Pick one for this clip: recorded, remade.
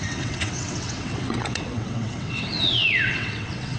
remade